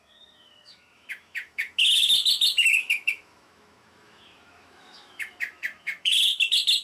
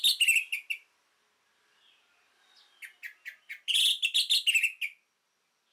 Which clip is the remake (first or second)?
first